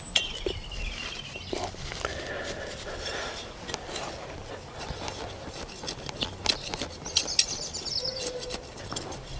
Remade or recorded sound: recorded